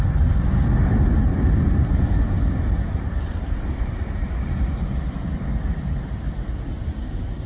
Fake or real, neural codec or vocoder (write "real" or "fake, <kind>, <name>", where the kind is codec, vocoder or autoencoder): real